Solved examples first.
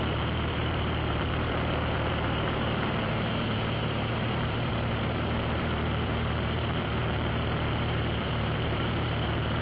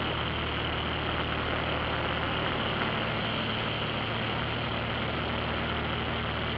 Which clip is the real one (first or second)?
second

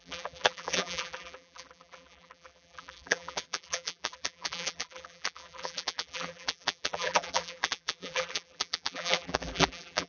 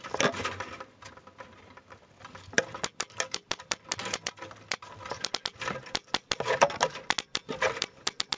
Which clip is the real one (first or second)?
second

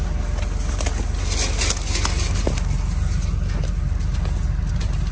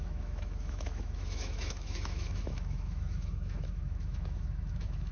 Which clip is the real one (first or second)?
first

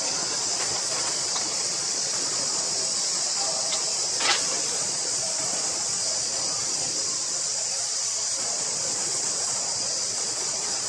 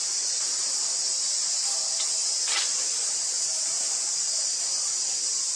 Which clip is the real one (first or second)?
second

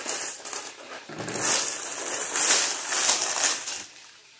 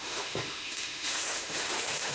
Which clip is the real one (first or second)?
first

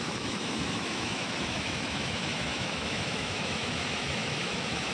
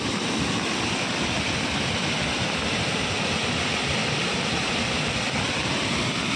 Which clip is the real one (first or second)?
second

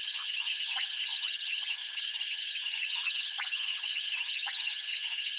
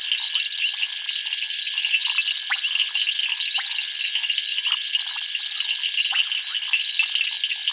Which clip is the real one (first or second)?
second